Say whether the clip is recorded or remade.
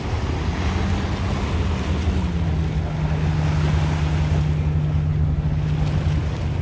recorded